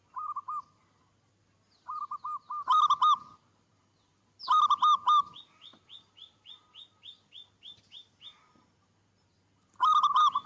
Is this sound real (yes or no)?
yes